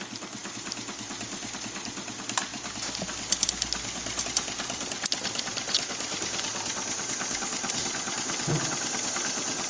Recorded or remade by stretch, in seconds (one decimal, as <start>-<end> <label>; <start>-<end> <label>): 0.0-9.7 recorded